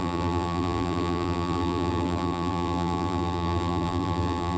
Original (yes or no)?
no